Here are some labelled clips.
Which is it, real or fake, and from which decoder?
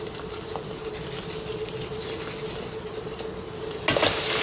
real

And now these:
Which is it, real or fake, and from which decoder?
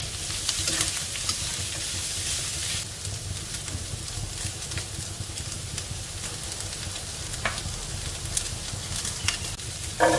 real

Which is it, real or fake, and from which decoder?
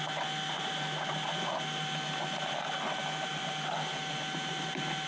real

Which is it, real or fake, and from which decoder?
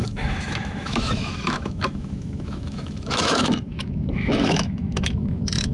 fake, autoencoder, DAC-VAE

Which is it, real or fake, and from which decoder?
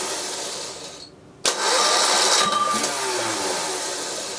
real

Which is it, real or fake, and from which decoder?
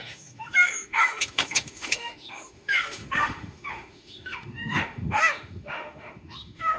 fake, autoencoder, DAC-VAE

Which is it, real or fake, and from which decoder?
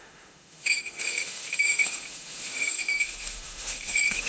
fake, autoencoder, DAC-VAE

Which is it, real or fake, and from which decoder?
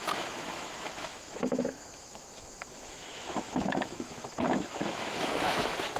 fake, autoencoder, DAC-VAE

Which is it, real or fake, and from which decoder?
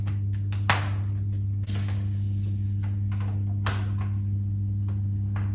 real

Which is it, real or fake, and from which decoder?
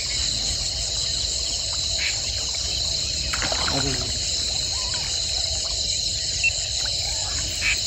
real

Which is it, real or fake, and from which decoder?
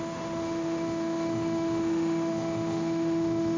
fake, autoencoder, DAC-VAE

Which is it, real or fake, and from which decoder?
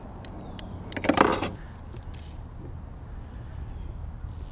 real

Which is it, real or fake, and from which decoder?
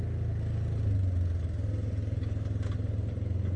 real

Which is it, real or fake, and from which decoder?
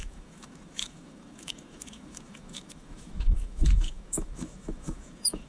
fake, autoencoder, DAC-VAE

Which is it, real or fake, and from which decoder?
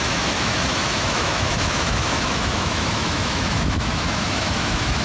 fake, autoencoder, DAC-VAE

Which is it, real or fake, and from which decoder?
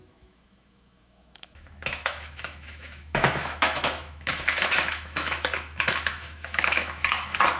fake, autoencoder, DAC-VAE